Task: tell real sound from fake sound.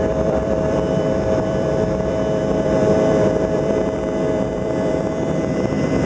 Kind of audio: fake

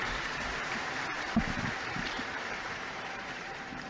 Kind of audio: fake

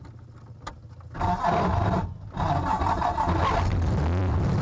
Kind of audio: real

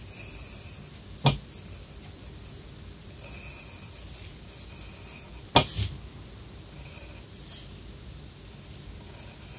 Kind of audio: real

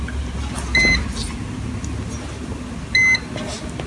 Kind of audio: real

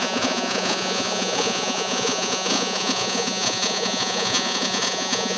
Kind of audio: fake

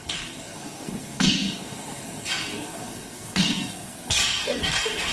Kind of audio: fake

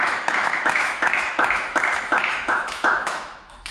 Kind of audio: fake